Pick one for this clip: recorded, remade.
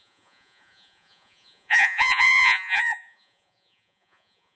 remade